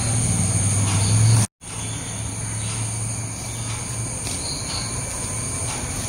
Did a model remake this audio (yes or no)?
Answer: no